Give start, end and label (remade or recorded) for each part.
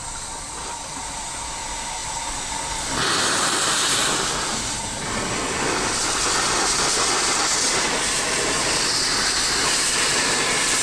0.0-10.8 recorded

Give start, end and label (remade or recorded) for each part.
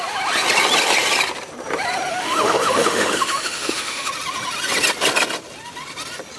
0.0-2.1 recorded; 2.1-4.1 remade; 4.1-6.4 recorded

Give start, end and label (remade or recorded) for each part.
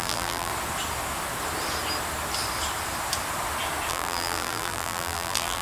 0.0-0.5 remade; 0.5-3.9 recorded; 3.9-5.6 remade